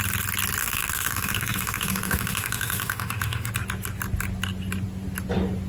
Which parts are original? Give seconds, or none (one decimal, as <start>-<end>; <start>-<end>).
0.0-0.6; 3.5-5.7